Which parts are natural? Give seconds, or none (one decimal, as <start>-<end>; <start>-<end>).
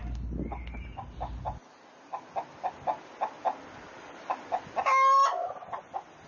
0.0-6.3